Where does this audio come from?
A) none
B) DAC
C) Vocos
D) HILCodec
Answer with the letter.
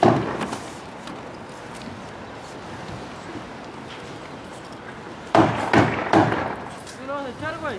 A